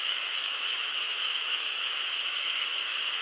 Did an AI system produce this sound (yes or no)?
yes